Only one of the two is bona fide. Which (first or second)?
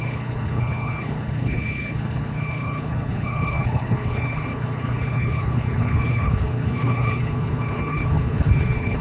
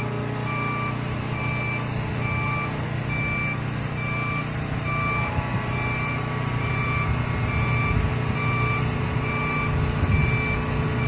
second